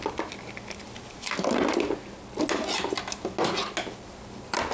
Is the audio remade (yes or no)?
no